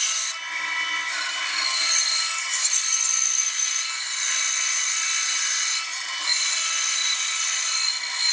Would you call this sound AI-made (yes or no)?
no